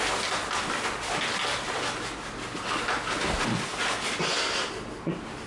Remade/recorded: recorded